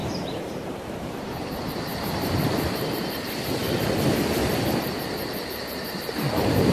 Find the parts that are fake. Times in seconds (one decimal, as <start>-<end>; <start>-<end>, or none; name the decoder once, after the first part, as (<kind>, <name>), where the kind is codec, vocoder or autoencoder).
0.0-1.7 (vocoder, BigVGAN v2)